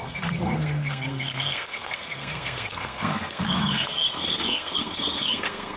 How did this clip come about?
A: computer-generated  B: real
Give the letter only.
A